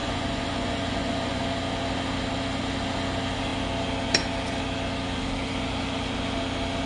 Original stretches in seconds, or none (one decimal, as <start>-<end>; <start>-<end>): 1.4-6.9